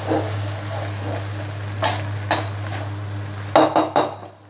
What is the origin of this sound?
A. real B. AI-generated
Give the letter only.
A